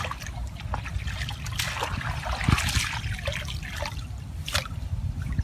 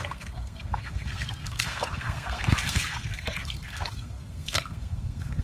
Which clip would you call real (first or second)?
first